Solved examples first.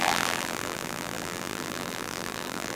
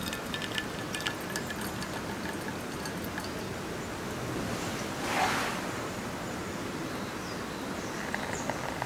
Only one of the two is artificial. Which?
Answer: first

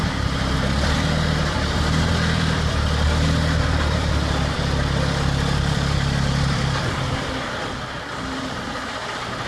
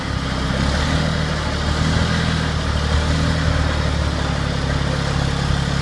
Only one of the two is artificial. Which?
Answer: first